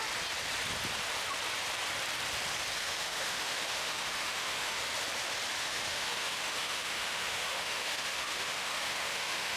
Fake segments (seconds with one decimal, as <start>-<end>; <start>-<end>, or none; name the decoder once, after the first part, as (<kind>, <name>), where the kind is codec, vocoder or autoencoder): 2.8-4.8 (autoencoder, DAC-VAE); 5.6-9.6